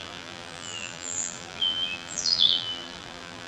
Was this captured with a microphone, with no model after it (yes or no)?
no